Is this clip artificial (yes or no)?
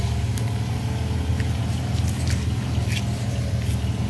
no